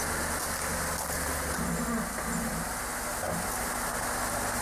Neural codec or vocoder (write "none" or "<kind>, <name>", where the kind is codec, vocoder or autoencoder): none